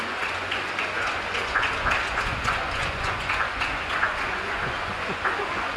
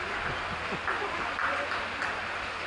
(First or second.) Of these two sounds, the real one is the second